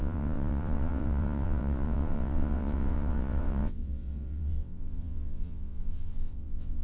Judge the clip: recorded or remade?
remade